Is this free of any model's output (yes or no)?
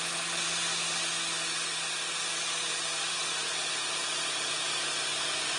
yes